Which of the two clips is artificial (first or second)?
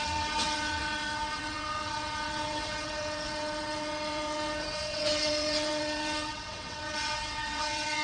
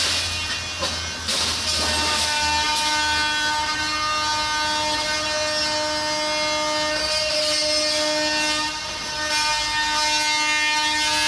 first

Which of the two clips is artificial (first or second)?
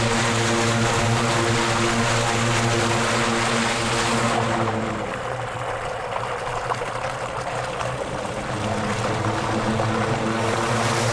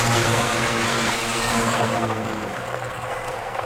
second